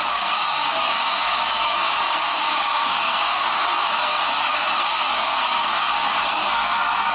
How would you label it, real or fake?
fake